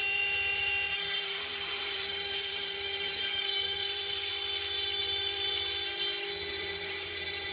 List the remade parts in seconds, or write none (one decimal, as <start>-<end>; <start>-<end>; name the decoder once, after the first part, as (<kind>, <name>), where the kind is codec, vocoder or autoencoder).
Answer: 0.0-4.3 (vocoder, BigVGAN v2); 5.0-5.5; 6.5-7.5